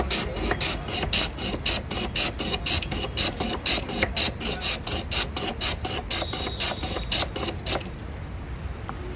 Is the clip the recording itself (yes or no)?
yes